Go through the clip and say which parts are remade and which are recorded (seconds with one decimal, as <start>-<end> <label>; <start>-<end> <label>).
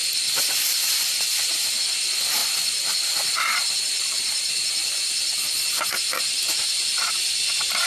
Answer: 0.0-7.9 recorded